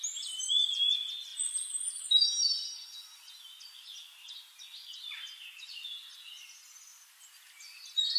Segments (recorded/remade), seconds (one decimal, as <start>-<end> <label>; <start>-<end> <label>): 0.0-8.2 recorded